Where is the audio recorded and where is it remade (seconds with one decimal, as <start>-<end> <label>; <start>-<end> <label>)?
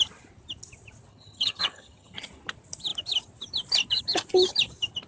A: 0.0-1.1 recorded; 1.1-2.2 remade; 2.2-5.1 recorded